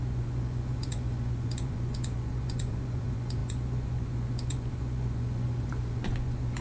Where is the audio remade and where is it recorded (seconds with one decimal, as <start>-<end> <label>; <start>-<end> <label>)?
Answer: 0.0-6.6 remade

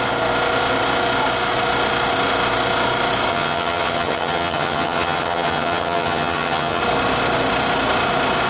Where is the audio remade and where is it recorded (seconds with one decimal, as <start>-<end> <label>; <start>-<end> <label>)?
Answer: 0.0-3.3 recorded; 3.3-6.8 remade; 6.8-8.5 recorded

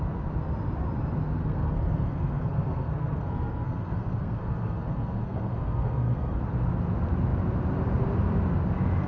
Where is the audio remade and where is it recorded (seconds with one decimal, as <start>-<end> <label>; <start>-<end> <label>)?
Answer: 0.0-1.4 recorded; 1.4-6.4 remade; 6.4-9.1 recorded

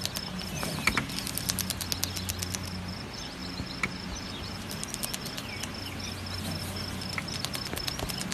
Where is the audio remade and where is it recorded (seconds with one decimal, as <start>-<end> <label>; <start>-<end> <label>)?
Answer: 0.0-8.3 recorded

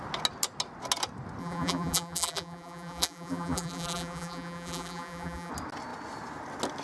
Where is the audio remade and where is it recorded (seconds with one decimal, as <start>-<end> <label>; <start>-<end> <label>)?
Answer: 0.0-1.4 recorded; 1.4-5.5 remade; 5.5-6.8 recorded

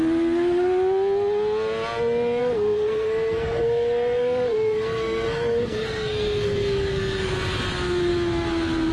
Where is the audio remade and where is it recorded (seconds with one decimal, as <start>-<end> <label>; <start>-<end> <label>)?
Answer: 0.0-2.4 recorded; 2.4-7.3 remade; 7.3-8.9 recorded

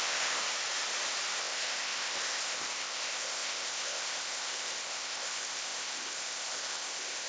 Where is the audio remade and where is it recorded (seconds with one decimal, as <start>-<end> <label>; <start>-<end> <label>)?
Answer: 0.0-0.4 remade; 0.4-1.4 recorded; 1.4-7.3 remade